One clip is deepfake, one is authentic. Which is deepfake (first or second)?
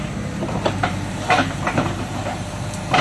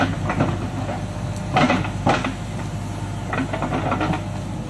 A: first